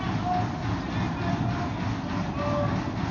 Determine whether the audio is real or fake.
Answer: real